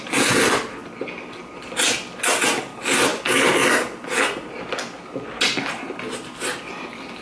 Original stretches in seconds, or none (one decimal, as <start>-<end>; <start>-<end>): 0.0-7.2